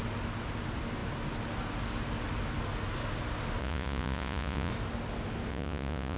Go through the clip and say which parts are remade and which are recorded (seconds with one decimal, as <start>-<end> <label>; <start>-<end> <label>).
0.0-3.6 recorded; 3.6-4.7 remade; 4.7-5.5 recorded; 5.5-6.2 remade

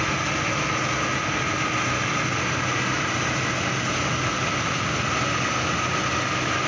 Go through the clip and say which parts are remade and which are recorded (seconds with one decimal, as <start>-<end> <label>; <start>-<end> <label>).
0.0-6.7 recorded

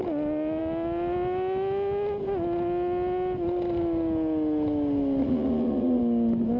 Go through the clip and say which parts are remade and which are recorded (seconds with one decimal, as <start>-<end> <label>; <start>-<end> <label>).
0.0-5.2 recorded; 5.2-6.0 remade; 6.0-6.6 recorded

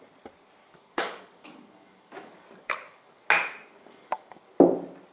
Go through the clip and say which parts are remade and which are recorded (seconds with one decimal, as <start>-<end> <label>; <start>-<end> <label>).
0.0-0.6 recorded; 0.6-3.2 remade; 3.2-3.7 recorded; 3.7-4.5 remade; 4.5-5.1 recorded

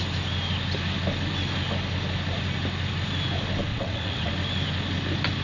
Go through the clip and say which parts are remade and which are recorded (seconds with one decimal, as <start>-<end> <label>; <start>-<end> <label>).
0.0-3.7 recorded; 3.7-4.3 remade; 4.3-5.4 recorded

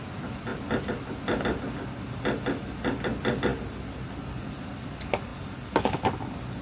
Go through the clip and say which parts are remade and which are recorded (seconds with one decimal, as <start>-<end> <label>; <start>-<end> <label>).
0.0-6.6 recorded

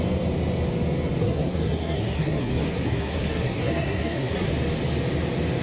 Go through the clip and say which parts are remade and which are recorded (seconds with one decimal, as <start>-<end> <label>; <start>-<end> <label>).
0.0-1.2 recorded; 1.2-4.5 remade; 4.5-5.6 recorded